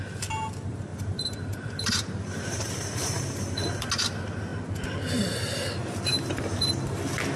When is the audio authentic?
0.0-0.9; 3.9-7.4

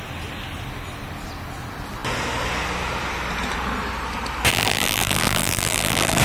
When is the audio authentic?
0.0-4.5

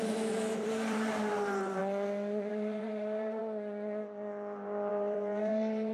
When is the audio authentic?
1.8-2.5; 3.4-4.9

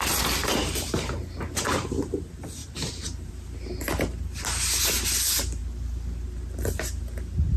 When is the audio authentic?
0.0-2.6; 3.3-7.6

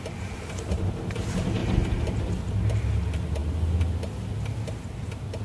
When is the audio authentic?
0.0-1.6; 2.5-3.4; 4.3-5.4

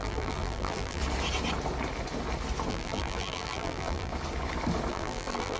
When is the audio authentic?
1.0-2.7; 4.1-4.9